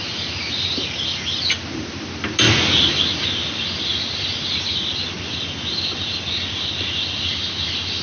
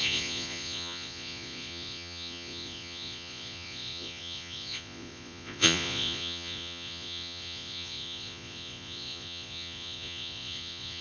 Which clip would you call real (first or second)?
first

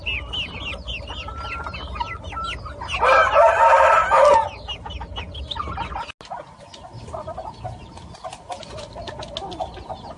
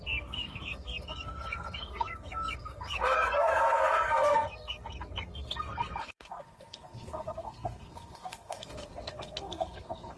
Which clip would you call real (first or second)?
first